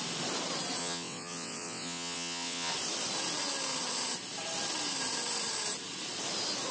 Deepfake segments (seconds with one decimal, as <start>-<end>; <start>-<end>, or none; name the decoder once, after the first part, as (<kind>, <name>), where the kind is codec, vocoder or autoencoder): 0.8-2.7 (vocoder, WaveNeXt)